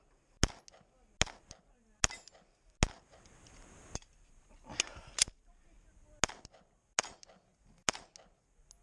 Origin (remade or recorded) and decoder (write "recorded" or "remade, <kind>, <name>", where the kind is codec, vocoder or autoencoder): recorded